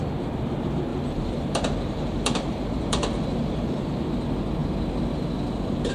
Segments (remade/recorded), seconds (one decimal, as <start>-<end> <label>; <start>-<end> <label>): 0.0-0.9 recorded; 0.9-4.0 remade; 4.0-5.9 recorded